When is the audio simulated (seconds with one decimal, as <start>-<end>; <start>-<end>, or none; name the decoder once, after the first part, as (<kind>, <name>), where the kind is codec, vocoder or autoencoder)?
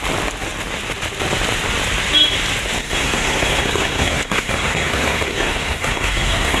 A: 2.8-6.6 (codec, SNAC)